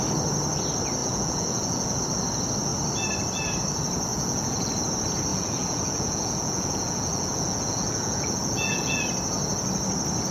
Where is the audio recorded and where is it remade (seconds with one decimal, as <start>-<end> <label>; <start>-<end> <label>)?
0.0-1.0 recorded; 1.0-2.0 remade; 2.0-4.1 recorded; 4.1-4.7 remade; 4.7-5.3 recorded; 5.3-9.0 remade; 9.0-10.3 recorded